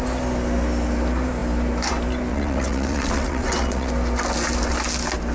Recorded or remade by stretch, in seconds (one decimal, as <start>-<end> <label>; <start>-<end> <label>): 0.0-2.3 recorded; 2.3-3.9 remade; 3.9-5.3 recorded